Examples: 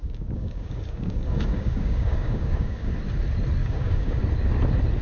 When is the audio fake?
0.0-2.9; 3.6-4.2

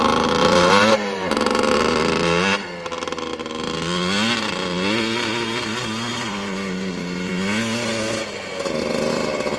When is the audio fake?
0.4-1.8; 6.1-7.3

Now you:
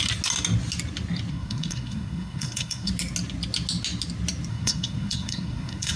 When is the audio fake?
1.3-2.9; 4.5-6.0

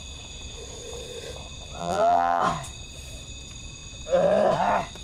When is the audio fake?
1.8-2.4

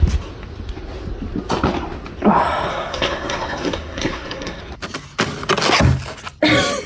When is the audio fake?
2.7-4.6

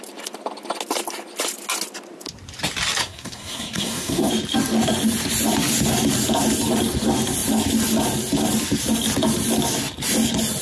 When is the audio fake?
3.0-4.3

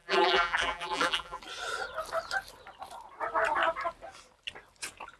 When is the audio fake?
0.0-1.4